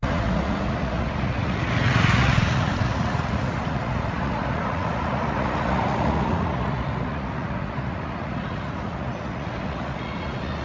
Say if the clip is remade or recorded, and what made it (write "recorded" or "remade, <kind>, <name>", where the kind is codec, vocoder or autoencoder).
remade, vocoder, Vocos